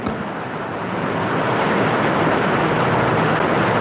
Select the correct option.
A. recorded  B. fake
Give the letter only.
A